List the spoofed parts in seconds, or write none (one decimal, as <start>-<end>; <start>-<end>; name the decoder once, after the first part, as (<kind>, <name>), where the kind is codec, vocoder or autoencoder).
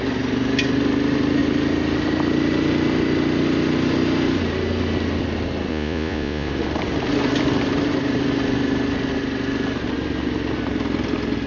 5.7-6.5 (vocoder, Vocos)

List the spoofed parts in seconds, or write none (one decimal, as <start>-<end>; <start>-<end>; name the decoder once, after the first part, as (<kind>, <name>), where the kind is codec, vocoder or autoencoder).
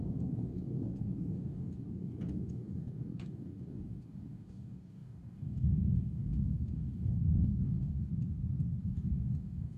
0.0-8.1 (codec, DAC); 8.8-9.8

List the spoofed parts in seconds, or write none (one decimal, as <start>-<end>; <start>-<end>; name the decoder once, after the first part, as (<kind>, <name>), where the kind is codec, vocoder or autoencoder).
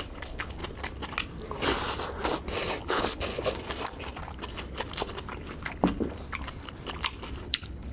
0.0-0.6 (codec, HILCodec); 2.8-3.3; 7.4-7.9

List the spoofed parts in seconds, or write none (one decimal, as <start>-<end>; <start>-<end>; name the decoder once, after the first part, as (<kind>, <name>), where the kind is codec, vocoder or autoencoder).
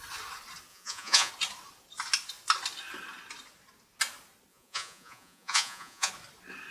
0.7-1.3 (vocoder, Vocos); 4.5-6.1